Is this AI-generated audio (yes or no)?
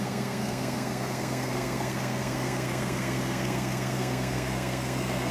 yes